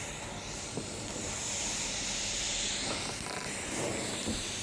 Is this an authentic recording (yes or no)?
no